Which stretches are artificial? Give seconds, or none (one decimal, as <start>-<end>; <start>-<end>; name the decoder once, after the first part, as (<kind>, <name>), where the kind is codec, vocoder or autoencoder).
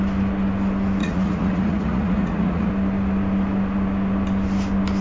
1.0-2.7 (vocoder, Vocos)